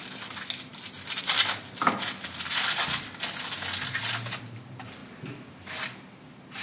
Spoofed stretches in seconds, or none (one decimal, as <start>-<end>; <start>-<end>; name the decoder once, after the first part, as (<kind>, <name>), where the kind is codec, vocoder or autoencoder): none